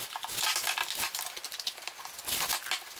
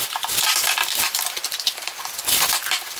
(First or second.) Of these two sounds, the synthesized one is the second